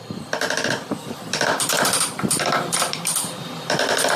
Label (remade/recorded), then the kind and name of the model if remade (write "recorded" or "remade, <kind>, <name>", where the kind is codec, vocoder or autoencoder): recorded